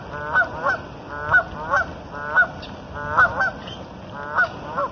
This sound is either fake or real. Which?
real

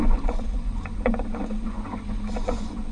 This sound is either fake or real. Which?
fake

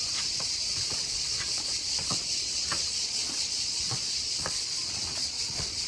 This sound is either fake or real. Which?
fake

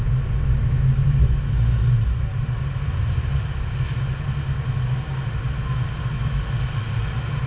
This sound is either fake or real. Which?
real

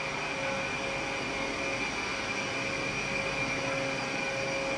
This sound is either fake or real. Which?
real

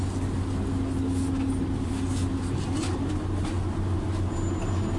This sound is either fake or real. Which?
real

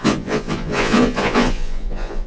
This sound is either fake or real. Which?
fake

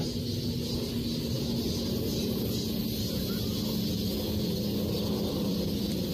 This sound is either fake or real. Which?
real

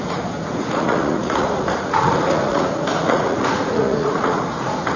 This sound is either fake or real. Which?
fake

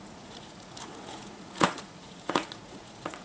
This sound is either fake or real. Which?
fake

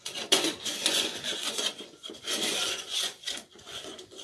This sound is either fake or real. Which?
fake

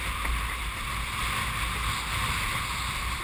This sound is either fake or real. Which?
real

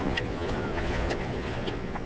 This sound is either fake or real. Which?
fake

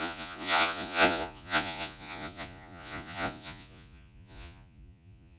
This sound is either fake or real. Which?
fake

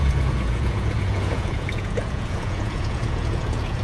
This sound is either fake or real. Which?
fake